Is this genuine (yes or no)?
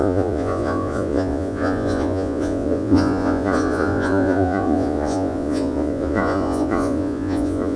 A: no